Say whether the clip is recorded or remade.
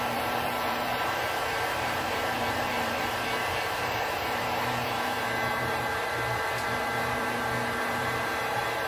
remade